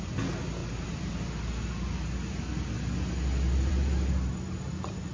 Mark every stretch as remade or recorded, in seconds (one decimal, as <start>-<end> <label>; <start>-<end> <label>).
0.0-5.1 recorded